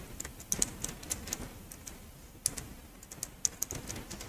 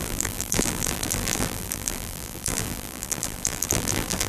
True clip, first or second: first